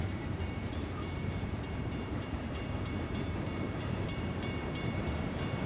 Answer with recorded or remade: remade